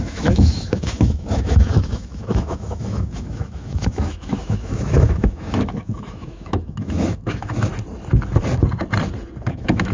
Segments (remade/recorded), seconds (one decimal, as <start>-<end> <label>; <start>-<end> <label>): 0.0-7.7 remade; 7.7-9.5 recorded; 9.5-9.9 remade